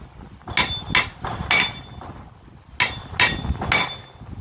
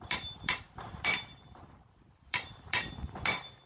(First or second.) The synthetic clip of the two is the second